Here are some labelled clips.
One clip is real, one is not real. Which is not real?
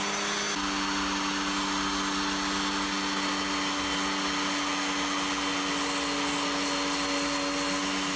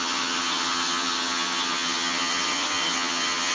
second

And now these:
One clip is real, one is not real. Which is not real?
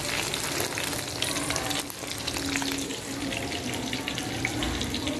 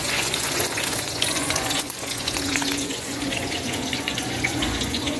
second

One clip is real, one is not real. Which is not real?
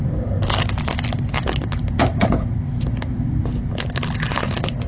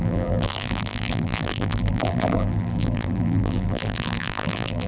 second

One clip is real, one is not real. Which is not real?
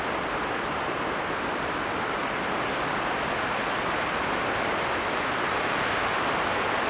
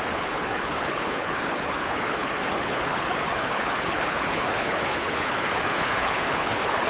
second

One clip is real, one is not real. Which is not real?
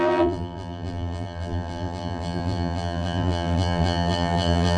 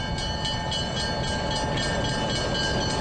first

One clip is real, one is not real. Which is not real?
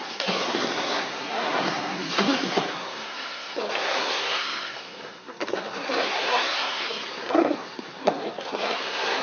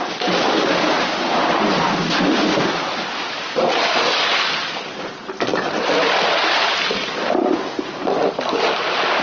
first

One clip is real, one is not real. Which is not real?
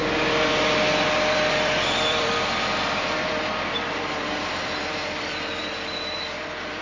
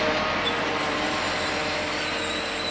first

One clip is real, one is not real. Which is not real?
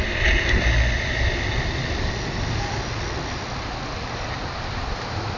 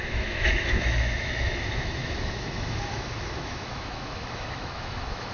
second